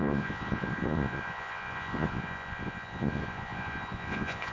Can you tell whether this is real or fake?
fake